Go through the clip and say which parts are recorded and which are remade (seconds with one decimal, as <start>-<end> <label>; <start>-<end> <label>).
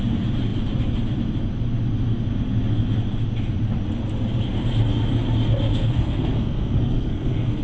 0.0-5.7 recorded; 5.7-7.6 remade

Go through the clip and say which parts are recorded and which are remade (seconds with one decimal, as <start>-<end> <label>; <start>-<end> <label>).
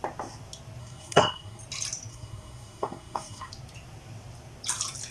0.0-0.8 recorded; 0.8-1.6 remade; 1.6-2.1 recorded; 2.1-3.5 remade; 3.5-5.1 recorded